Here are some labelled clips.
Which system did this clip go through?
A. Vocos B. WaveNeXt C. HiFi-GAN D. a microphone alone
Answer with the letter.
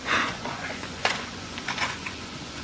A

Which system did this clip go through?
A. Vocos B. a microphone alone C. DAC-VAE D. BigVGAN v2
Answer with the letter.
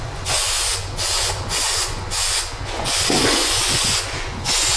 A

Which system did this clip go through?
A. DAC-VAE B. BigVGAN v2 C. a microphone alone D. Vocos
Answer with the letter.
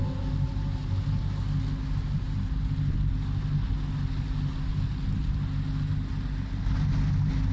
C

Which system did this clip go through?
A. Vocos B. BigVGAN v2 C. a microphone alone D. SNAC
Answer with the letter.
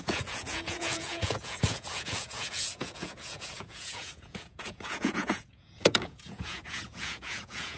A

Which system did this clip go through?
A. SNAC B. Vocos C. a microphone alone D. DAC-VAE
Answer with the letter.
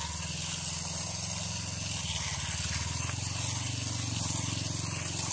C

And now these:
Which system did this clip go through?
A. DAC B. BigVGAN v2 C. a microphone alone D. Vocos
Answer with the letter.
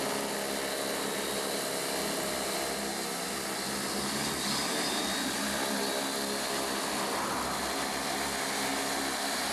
C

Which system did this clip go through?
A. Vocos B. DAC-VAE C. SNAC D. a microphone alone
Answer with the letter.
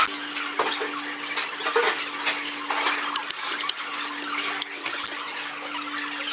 D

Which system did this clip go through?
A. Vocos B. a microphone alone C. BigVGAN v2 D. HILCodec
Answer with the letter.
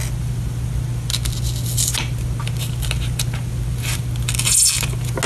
B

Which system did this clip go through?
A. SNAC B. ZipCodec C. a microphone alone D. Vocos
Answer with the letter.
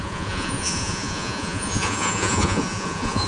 D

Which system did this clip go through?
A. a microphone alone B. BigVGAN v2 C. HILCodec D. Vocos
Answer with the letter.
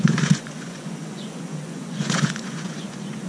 D